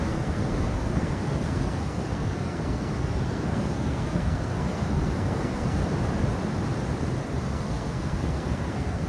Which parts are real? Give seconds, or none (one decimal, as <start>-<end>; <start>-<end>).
5.8-7.4